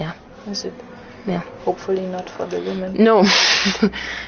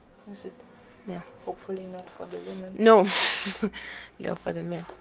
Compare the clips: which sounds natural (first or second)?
first